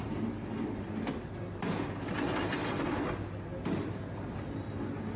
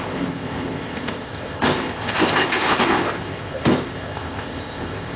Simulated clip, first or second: second